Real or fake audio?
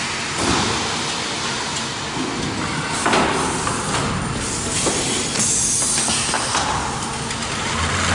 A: real